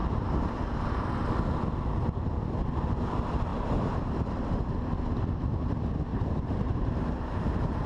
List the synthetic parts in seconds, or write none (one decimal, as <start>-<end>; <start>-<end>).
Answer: 3.5-4.0; 6.1-7.3